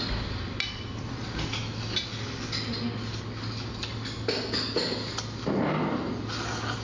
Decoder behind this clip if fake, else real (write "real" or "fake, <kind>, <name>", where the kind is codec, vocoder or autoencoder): real